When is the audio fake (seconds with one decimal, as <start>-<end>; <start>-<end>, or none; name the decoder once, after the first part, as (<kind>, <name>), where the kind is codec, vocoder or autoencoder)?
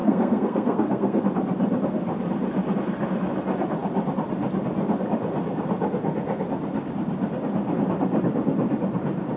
0.0-1.2 (codec, SNAC)